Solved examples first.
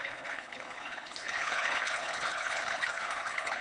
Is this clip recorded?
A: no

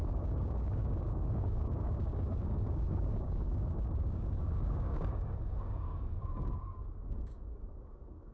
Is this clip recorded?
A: no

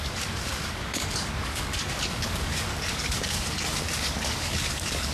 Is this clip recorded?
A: no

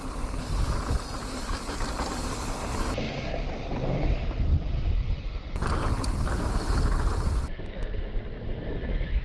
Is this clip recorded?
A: yes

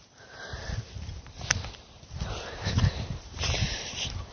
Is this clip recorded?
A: no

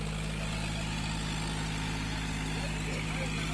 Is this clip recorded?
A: yes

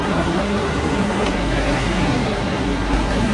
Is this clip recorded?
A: no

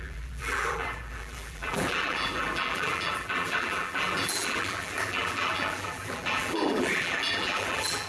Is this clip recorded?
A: no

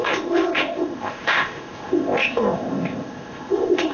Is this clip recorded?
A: no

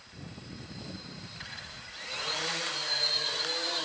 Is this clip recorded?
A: no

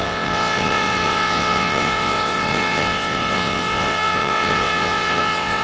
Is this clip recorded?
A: no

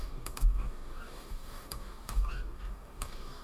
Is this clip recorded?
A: no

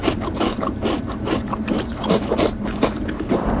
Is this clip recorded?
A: no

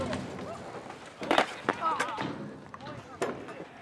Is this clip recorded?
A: yes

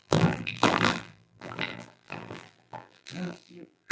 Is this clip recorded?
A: no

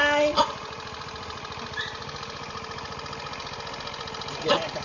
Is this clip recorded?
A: yes